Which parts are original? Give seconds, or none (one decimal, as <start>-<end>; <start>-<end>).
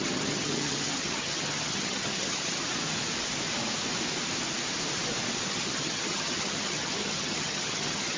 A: 2.6-5.5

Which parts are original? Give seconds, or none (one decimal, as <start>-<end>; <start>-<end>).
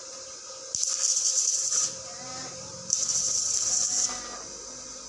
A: 0.5-1.1; 4.2-5.1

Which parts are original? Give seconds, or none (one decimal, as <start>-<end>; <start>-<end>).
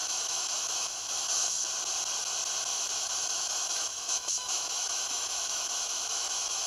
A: 1.6-2.7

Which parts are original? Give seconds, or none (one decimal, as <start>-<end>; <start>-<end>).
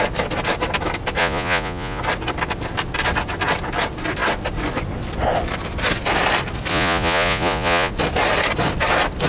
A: 0.0-1.2; 2.0-6.7; 7.9-9.3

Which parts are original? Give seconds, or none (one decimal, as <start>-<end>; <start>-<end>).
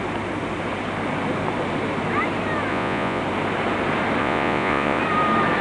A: 0.0-2.7; 3.2-4.2; 5.0-5.6